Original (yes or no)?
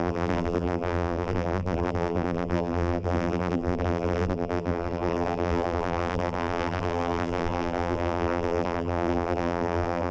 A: no